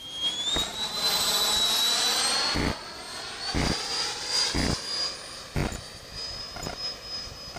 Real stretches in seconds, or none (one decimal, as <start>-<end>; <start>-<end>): 0.0-7.6